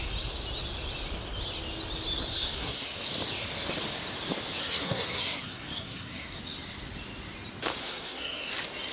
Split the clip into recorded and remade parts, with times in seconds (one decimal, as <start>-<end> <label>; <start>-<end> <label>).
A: 0.0-2.3 recorded; 2.3-2.9 remade; 2.9-4.6 recorded; 4.6-6.4 remade; 6.4-7.8 recorded; 7.8-8.5 remade; 8.5-8.9 recorded